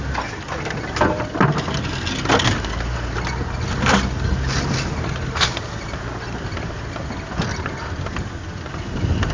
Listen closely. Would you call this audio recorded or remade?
recorded